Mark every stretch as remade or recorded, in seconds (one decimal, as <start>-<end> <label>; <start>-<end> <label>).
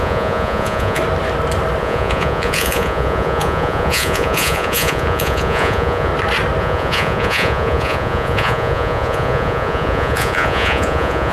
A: 0.0-1.0 remade; 1.0-1.8 recorded; 1.8-6.1 remade; 6.1-6.6 recorded; 6.6-11.3 remade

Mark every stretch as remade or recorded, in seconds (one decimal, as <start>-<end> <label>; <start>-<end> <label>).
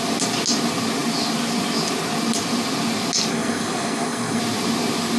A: 0.0-3.3 recorded; 3.3-4.4 remade; 4.4-5.2 recorded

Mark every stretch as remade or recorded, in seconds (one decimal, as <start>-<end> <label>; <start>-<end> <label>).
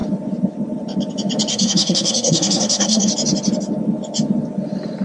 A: 0.0-1.5 recorded; 1.5-3.1 remade; 3.1-5.0 recorded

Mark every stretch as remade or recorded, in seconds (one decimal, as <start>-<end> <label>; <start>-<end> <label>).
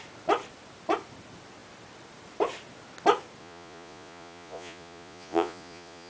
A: 0.0-3.4 recorded; 3.4-6.1 remade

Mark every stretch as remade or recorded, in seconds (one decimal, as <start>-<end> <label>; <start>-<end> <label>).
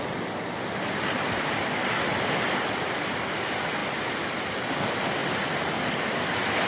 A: 0.0-6.7 recorded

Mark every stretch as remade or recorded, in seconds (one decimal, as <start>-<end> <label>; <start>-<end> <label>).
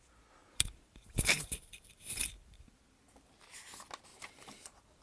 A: 0.0-0.4 recorded; 0.4-2.8 remade; 2.8-4.1 recorded; 4.1-5.0 remade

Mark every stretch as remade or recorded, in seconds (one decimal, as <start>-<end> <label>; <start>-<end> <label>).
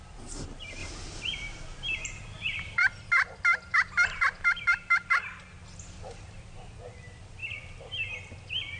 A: 0.0-0.8 recorded; 0.8-2.8 remade; 2.8-3.5 recorded; 3.5-5.1 remade; 5.1-8.8 recorded